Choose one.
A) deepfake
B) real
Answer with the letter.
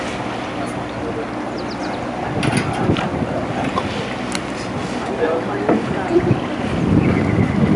B